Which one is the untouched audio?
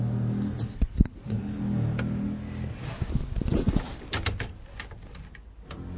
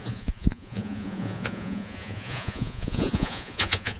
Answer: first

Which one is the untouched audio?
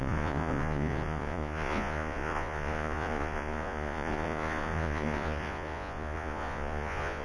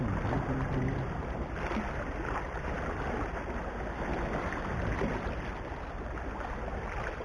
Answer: second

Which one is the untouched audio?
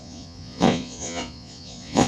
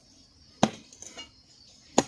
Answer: second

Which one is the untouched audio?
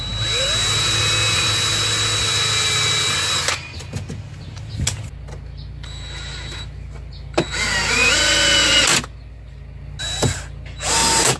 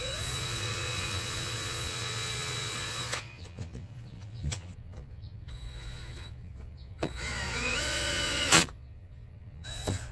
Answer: first